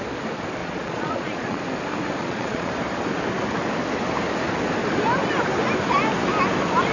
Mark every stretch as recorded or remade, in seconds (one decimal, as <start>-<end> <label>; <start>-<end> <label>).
0.0-0.6 recorded; 0.6-1.6 remade; 1.6-2.2 recorded; 2.2-2.7 remade; 2.7-6.9 recorded